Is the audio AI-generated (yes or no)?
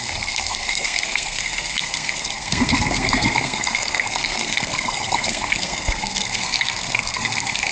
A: yes